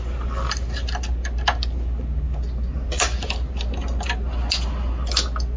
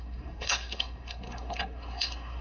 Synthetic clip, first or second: second